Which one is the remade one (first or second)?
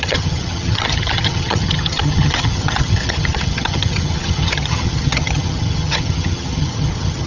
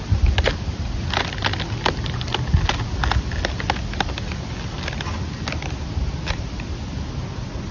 first